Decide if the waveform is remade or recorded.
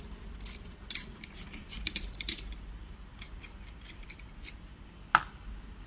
recorded